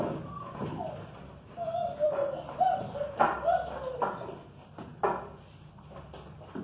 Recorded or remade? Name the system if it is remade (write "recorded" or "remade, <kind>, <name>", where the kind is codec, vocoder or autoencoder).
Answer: recorded